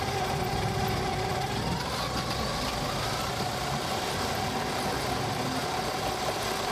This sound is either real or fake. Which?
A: real